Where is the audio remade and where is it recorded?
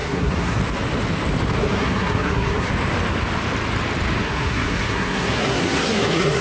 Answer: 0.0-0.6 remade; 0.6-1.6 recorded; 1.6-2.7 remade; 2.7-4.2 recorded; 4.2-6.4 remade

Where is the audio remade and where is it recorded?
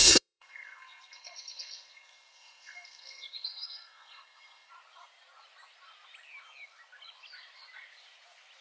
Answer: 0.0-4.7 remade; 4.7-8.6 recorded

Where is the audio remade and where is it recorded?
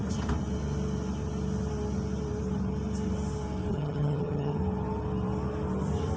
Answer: 0.0-3.7 recorded; 3.7-4.6 remade; 4.6-6.2 recorded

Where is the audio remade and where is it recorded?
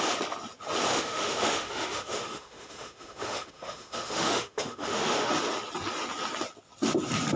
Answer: 0.0-0.9 recorded; 0.9-5.3 remade; 5.3-7.4 recorded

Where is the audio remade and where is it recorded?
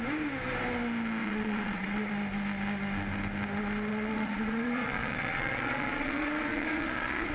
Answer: 0.0-1.2 recorded; 1.2-2.1 remade; 2.1-3.9 recorded; 3.9-7.3 remade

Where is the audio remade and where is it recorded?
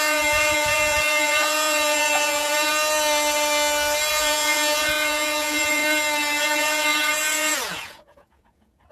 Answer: 0.0-2.7 remade; 2.7-4.1 recorded; 4.1-5.8 remade; 5.8-6.4 recorded; 6.4-8.9 remade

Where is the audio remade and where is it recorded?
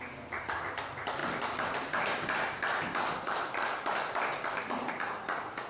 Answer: 0.0-5.7 recorded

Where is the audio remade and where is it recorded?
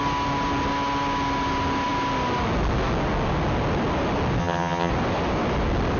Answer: 0.0-4.4 recorded; 4.4-4.9 remade; 4.9-6.0 recorded